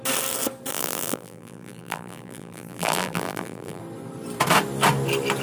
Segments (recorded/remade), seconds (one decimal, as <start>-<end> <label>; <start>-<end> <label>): 0.0-0.7 recorded; 0.7-3.8 remade; 3.8-5.4 recorded